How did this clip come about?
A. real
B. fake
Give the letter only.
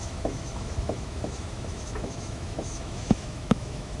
B